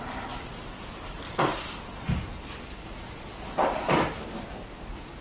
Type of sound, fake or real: fake